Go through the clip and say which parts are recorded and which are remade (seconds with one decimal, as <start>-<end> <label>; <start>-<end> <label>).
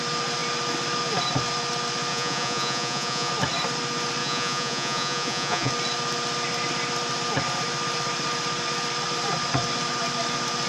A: 0.0-2.1 recorded; 2.1-3.3 remade; 3.3-4.2 recorded; 4.2-5.7 remade; 5.7-10.7 recorded